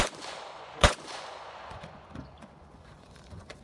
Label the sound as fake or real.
fake